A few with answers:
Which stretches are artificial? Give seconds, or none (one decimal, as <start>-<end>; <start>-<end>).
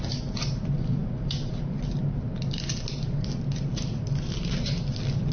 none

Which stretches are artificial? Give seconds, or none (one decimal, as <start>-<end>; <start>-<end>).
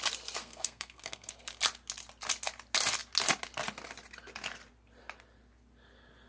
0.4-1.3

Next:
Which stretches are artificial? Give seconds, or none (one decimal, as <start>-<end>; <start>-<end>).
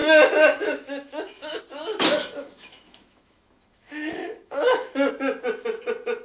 0.0-1.6; 2.2-5.1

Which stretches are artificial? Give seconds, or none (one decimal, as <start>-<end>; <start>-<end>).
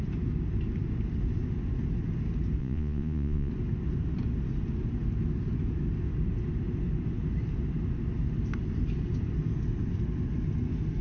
2.6-3.5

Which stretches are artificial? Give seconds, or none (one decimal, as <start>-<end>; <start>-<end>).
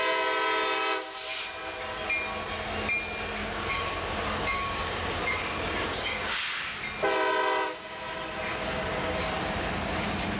3.4-6.6; 8.5-9.4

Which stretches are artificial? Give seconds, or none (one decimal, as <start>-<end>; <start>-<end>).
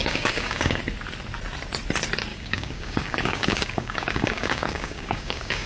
0.0-0.8; 2.3-5.7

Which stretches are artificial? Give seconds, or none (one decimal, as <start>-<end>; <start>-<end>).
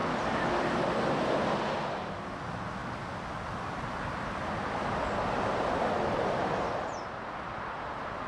none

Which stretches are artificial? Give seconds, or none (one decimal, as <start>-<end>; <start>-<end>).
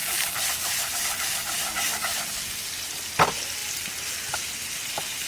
1.6-2.2